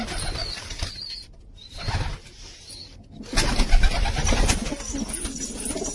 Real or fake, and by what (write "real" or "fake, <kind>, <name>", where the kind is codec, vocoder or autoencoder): fake, vocoder, BigVGAN v2